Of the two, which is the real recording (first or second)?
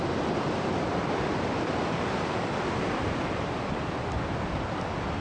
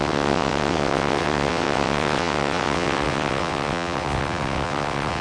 first